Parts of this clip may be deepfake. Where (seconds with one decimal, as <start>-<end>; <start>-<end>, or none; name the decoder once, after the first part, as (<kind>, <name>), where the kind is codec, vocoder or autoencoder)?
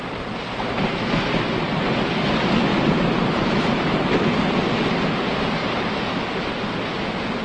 2.7-4.0 (vocoder, BigVGAN v2); 5.6-6.1